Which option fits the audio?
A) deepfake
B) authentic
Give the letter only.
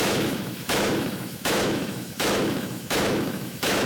A